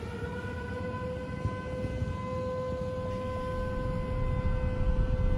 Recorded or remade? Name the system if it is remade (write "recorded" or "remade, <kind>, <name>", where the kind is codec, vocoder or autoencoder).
recorded